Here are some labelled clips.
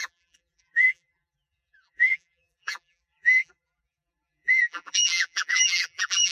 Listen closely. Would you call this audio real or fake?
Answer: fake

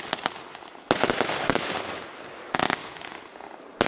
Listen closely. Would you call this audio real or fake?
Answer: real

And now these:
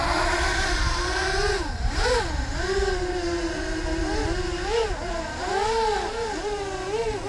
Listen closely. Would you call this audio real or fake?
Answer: fake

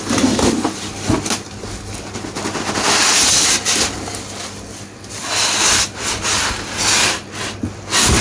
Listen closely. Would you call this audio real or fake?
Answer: real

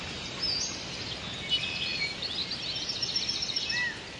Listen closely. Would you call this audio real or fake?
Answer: real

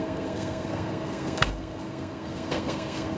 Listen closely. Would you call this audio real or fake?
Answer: fake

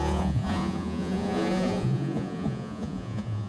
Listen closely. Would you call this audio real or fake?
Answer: fake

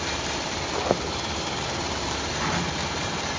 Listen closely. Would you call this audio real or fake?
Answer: fake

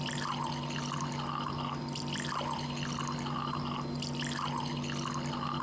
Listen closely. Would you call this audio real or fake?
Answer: real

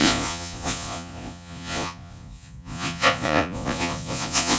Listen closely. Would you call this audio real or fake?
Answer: fake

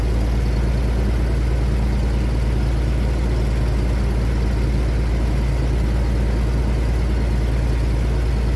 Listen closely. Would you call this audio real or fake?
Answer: real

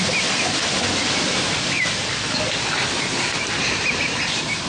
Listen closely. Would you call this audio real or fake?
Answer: real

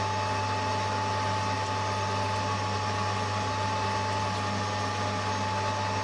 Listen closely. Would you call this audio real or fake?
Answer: real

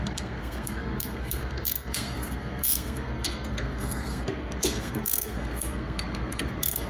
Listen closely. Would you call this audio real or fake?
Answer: fake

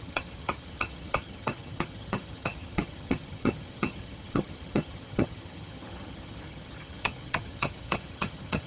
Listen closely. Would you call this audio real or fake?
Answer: fake